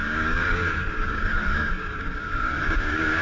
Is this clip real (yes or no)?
no